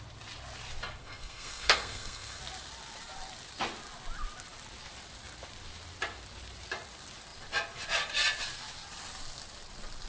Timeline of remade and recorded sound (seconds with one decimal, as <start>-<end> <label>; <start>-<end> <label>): 0.0-1.0 recorded; 1.0-2.4 remade; 2.4-10.1 recorded